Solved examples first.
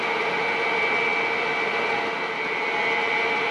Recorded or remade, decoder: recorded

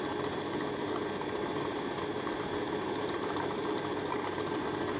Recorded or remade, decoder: recorded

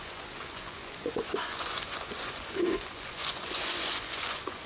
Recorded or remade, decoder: remade, vocoder, Vocos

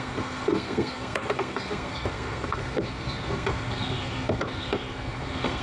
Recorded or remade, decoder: remade, codec, SNAC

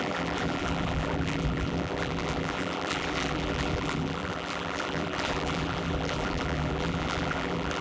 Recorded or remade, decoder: remade, vocoder, BigVGAN v2